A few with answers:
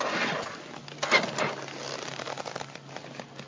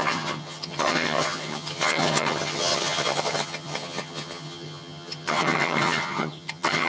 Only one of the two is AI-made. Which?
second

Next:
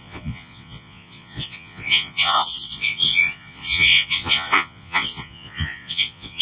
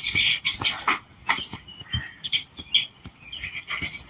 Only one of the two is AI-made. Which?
first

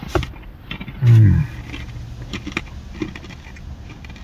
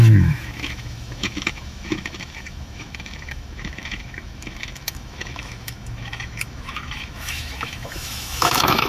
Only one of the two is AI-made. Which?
second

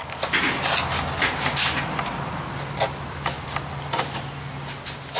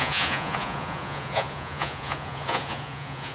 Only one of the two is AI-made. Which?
second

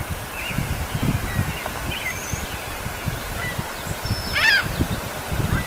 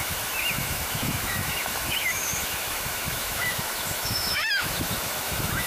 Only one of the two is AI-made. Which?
second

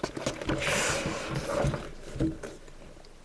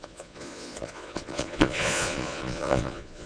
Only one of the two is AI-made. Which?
second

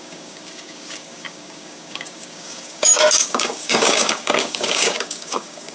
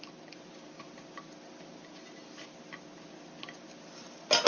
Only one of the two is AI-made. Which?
first